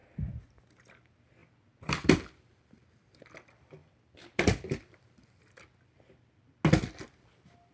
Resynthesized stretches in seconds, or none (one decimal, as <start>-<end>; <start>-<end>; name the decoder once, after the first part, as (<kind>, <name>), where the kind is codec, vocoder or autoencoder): 1.4-2.8 (vocoder, BigVGAN v2); 3.8-5.4